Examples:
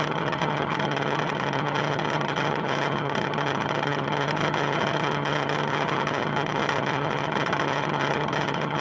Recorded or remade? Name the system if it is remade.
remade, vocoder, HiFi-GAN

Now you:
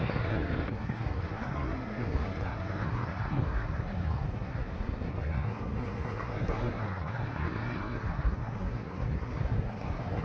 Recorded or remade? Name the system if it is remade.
remade, codec, SNAC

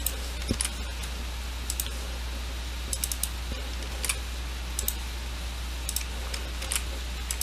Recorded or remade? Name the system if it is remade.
recorded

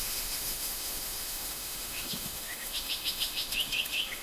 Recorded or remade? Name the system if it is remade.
remade, autoencoder, DAC-VAE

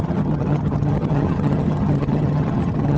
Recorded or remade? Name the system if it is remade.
remade, vocoder, HiFi-GAN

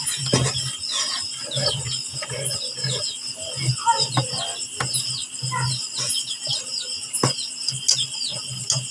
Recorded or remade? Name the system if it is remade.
recorded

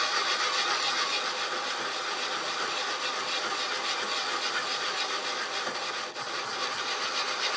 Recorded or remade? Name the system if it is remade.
recorded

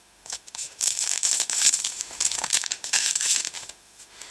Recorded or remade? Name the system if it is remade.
remade, autoencoder, DAC-VAE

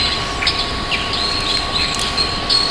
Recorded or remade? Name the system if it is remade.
recorded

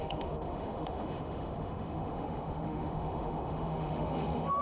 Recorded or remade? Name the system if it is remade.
remade, autoencoder, DAC-VAE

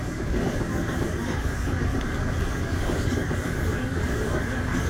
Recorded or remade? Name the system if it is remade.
remade, codec, DAC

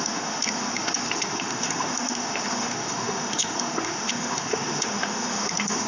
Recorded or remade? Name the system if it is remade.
remade, autoencoder, DAC-VAE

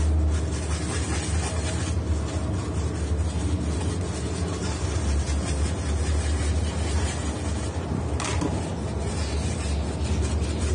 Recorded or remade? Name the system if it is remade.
recorded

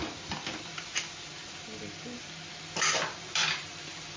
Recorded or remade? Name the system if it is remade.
recorded